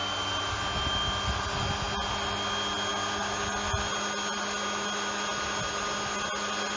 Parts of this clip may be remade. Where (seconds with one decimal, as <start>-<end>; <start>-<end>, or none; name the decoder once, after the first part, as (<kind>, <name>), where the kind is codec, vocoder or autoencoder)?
none